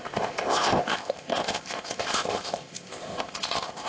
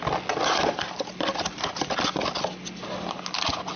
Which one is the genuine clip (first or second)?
second